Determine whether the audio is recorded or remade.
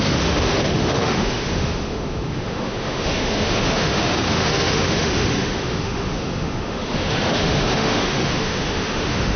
remade